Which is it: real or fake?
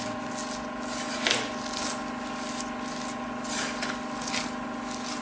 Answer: real